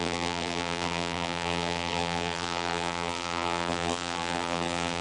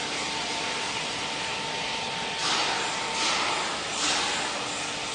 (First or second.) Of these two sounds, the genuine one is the second